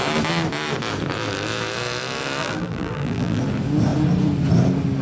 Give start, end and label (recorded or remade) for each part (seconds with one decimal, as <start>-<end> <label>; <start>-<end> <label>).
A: 0.0-2.4 recorded; 2.4-3.4 remade; 3.4-5.0 recorded